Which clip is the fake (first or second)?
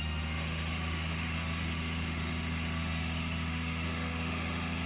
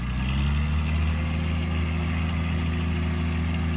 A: first